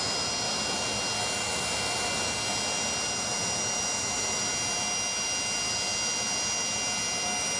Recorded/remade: recorded